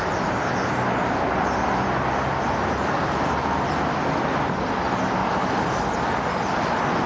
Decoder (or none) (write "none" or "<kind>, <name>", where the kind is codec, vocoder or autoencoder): none